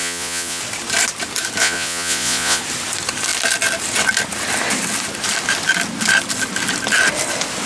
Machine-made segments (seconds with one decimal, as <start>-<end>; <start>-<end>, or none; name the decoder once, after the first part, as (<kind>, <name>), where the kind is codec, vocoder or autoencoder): 0.0-0.6 (vocoder, Vocos); 1.6-2.6